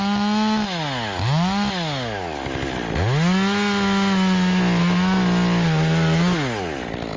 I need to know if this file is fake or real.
real